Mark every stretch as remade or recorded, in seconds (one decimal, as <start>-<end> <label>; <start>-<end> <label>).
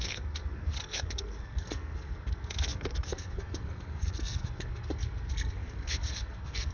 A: 0.0-6.7 remade